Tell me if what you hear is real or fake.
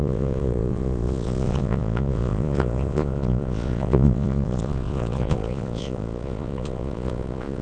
fake